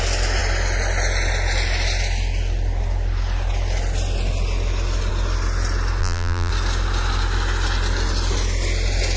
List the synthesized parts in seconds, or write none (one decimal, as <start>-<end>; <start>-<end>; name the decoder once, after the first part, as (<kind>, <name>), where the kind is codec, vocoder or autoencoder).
6.0-6.5 (vocoder, BigVGAN v2)